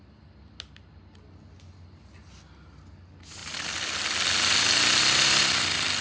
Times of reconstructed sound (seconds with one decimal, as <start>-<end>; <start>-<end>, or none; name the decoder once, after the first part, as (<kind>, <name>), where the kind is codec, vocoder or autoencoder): none